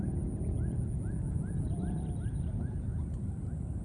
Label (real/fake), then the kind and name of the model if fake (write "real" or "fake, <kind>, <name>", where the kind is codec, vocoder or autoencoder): real